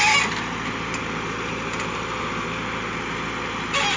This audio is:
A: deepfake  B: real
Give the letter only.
B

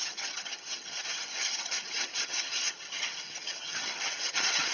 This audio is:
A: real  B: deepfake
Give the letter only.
B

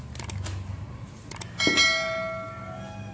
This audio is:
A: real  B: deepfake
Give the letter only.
A